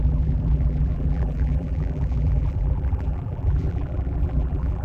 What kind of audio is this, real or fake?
fake